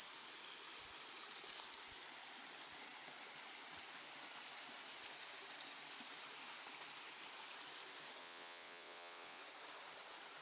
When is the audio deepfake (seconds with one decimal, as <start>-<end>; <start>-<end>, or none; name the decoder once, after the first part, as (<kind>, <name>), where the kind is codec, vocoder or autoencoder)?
8.2-9.4 (vocoder, WaveNeXt)